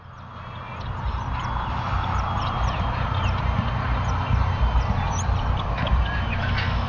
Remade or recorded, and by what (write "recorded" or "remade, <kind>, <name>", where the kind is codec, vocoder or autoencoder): recorded